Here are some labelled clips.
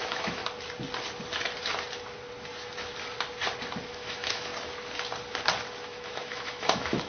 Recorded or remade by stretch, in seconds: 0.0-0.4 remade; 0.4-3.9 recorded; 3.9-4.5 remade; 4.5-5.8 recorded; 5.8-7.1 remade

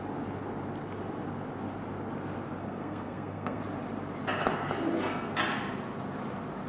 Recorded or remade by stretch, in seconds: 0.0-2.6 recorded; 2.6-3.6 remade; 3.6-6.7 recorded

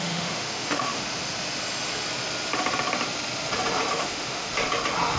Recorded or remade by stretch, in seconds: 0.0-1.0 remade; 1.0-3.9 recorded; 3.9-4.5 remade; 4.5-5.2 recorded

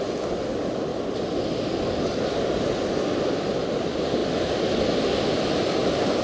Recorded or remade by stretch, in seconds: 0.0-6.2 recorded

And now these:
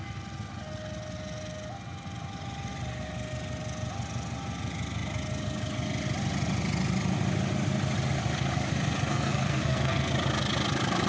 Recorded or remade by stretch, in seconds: 0.0-9.1 recorded; 9.1-10.1 remade; 10.1-11.1 recorded

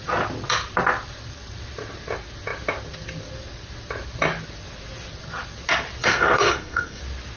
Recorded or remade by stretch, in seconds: 0.0-6.0 recorded; 6.0-7.0 remade; 7.0-7.4 recorded